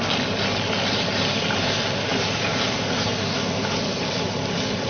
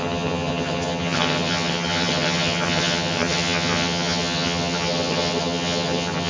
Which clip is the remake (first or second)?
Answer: second